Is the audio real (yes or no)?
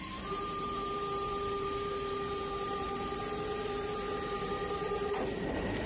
no